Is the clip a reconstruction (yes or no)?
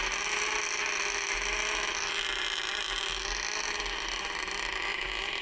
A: no